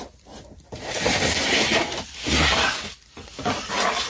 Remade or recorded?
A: recorded